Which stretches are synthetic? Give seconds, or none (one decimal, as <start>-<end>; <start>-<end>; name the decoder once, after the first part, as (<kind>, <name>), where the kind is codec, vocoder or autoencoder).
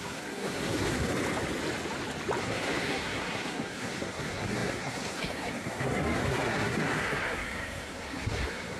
0.0-1.1 (codec, SNAC); 2.4-8.8